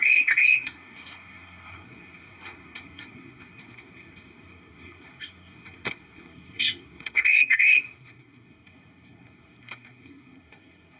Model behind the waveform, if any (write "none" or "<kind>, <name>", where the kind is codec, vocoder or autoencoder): codec, SNAC